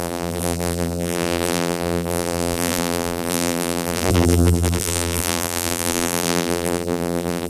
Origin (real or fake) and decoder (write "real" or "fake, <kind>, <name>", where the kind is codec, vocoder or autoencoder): fake, vocoder, BigVGAN v2